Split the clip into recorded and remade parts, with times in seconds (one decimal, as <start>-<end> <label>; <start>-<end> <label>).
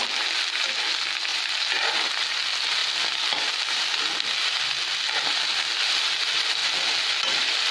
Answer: 0.0-7.7 recorded